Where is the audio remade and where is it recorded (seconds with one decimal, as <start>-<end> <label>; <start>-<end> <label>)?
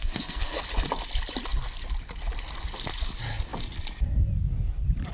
0.0-0.6 remade; 0.6-5.1 recorded